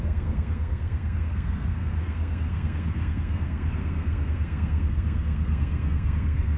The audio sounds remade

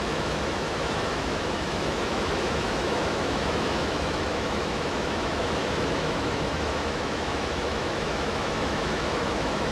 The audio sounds remade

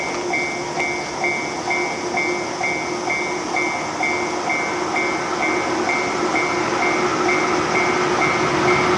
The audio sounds recorded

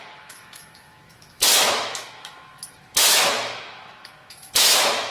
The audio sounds remade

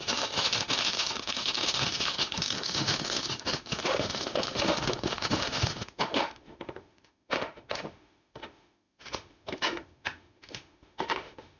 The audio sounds remade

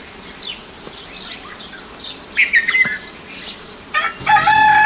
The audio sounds recorded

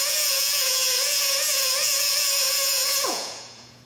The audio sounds remade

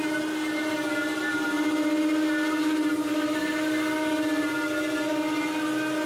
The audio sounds recorded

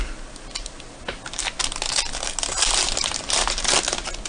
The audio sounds recorded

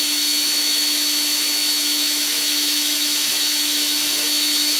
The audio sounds remade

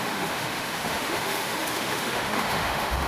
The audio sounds remade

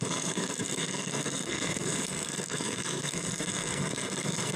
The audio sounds remade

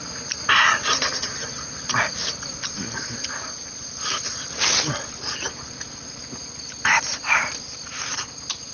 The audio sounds recorded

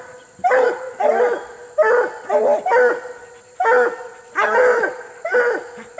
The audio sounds recorded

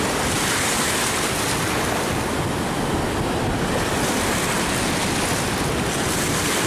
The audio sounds recorded